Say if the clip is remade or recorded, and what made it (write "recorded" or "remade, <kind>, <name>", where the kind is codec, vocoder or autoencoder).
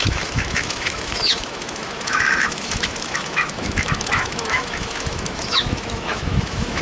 remade, autoencoder, DAC-VAE